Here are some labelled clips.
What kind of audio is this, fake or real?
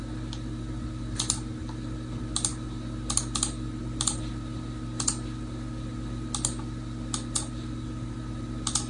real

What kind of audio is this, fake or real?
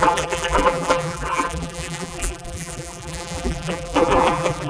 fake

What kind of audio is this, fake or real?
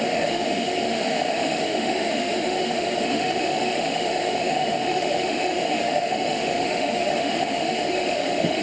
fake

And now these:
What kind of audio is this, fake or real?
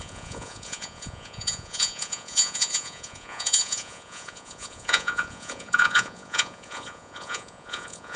fake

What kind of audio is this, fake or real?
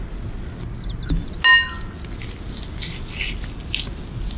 real